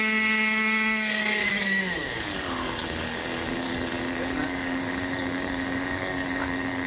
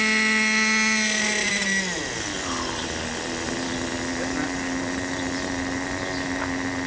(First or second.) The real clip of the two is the second